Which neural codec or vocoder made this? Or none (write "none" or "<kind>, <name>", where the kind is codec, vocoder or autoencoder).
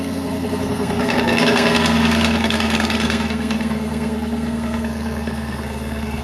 codec, SNAC